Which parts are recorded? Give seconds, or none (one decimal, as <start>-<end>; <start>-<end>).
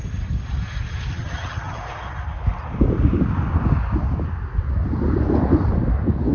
0.0-1.1; 1.8-6.3